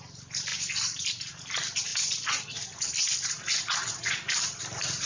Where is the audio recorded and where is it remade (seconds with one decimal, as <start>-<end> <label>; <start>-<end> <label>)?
0.0-5.1 recorded

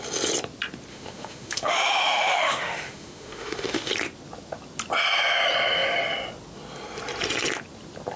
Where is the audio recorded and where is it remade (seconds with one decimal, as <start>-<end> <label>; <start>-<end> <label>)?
0.0-0.9 recorded; 0.9-3.9 remade; 3.9-8.2 recorded

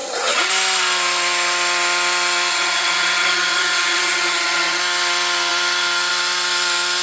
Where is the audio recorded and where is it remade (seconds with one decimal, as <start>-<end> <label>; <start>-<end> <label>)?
0.0-0.5 remade; 0.5-2.5 recorded; 2.5-4.8 remade; 4.8-7.0 recorded

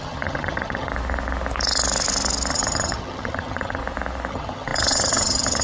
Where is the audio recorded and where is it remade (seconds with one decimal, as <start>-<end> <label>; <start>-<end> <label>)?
0.0-0.9 remade; 0.9-2.5 recorded; 2.5-3.8 remade; 3.8-4.3 recorded; 4.3-5.6 remade

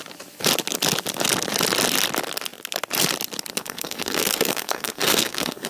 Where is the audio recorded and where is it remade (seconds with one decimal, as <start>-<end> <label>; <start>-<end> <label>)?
0.0-3.6 recorded; 3.6-5.7 remade

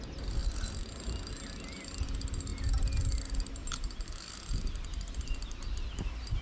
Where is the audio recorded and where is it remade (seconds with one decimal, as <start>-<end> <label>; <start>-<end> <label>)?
0.0-6.4 recorded